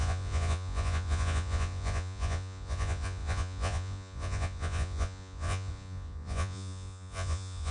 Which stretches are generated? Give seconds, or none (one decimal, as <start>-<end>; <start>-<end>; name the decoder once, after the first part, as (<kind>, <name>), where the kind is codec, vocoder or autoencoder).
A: 0.0-7.7 (vocoder, Vocos)